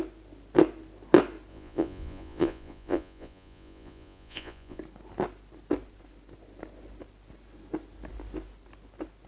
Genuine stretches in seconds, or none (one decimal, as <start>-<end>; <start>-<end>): 0.0-1.5; 4.8-9.3